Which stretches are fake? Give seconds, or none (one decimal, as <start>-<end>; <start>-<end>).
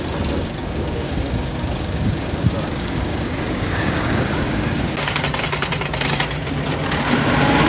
0.6-5.2